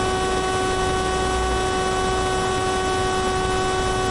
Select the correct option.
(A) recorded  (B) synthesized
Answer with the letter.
A